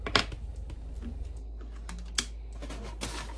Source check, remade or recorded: recorded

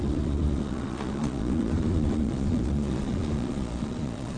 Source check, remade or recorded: remade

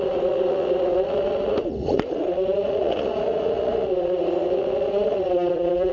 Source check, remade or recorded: remade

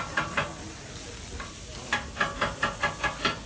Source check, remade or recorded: recorded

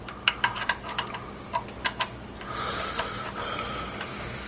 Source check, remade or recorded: remade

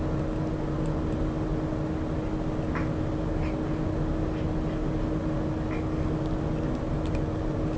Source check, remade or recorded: recorded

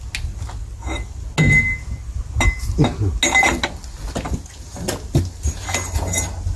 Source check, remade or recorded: recorded